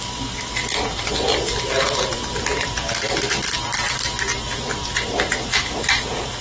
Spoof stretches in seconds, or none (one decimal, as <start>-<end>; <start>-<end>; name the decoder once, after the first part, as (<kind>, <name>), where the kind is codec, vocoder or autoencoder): 0.0-4.3 (vocoder, BigVGAN v2); 5.5-6.4

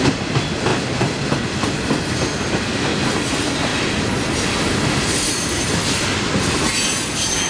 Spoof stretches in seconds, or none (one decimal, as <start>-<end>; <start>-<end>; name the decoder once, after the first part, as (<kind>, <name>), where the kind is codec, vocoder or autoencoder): 0.7-1.7 (vocoder, BigVGAN v2)